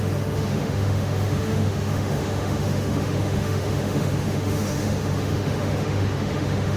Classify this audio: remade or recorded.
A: remade